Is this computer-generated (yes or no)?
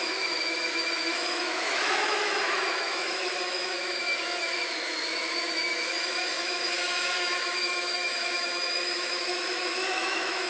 yes